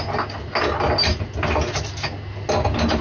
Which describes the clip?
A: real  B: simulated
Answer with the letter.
A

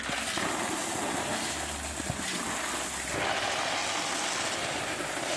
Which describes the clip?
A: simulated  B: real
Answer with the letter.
B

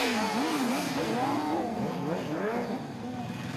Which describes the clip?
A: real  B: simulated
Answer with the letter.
B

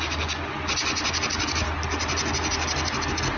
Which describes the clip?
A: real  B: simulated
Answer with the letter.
A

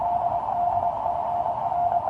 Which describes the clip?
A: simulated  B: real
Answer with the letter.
B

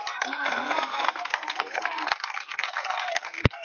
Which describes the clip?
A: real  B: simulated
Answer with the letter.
B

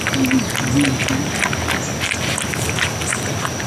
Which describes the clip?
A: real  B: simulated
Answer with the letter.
A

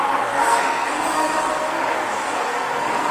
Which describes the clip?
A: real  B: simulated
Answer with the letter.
B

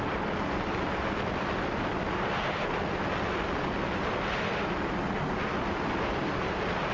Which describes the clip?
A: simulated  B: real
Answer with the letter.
B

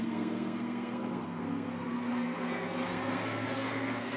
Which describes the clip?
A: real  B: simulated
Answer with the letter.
B